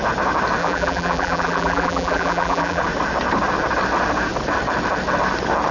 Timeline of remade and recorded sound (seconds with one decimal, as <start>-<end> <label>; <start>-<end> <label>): 0.0-0.6 recorded; 0.6-2.8 remade; 2.8-5.7 recorded